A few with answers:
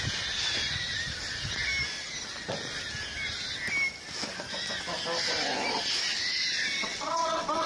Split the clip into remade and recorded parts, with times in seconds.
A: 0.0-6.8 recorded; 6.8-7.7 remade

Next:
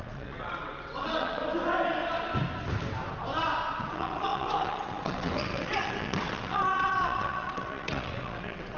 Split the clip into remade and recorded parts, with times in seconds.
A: 0.0-1.4 remade; 1.4-3.8 recorded; 3.8-8.8 remade

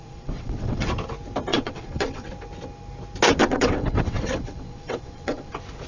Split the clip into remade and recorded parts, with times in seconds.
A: 0.0-0.9 remade; 0.9-1.5 recorded; 1.5-2.3 remade; 2.3-3.4 recorded; 3.4-5.5 remade; 5.5-5.9 recorded

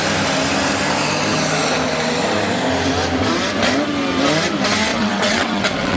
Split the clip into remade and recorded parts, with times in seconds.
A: 0.0-4.9 recorded; 4.9-6.0 remade